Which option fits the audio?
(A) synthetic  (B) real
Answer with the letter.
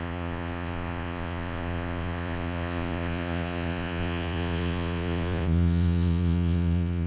A